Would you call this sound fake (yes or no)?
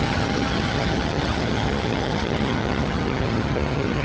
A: yes